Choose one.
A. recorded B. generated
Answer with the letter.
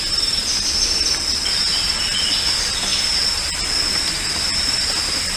A